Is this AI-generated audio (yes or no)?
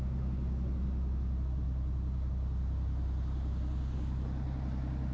no